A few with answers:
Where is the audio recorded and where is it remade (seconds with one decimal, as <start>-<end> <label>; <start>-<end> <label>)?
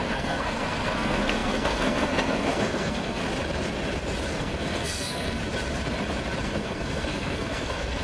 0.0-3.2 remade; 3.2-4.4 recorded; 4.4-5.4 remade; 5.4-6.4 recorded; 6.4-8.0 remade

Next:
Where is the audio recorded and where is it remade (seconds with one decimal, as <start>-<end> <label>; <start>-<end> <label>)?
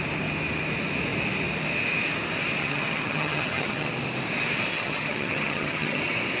0.0-2.6 recorded; 2.6-3.9 remade; 3.9-4.7 recorded; 4.7-6.0 remade; 6.0-6.4 recorded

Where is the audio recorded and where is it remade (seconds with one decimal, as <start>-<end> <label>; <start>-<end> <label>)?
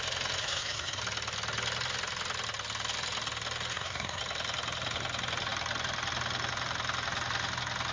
0.0-0.4 recorded; 0.4-1.0 remade; 1.0-3.7 recorded; 3.7-4.2 remade; 4.2-7.9 recorded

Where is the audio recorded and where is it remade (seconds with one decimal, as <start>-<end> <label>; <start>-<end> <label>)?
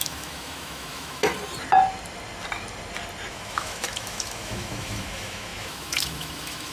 0.0-1.3 remade; 1.3-3.3 recorded; 3.3-6.7 remade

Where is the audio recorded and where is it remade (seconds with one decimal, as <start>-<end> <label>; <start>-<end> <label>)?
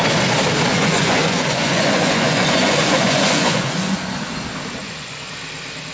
0.0-0.7 recorded; 0.7-4.2 remade; 4.2-4.8 recorded; 4.8-5.3 remade; 5.3-5.9 recorded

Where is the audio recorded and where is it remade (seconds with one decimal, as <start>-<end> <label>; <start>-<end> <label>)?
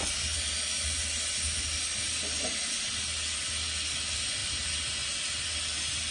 0.0-6.1 recorded